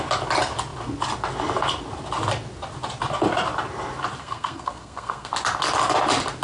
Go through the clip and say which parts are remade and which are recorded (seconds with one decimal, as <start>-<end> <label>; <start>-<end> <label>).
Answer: 0.0-4.2 recorded; 4.2-5.3 remade; 5.3-6.4 recorded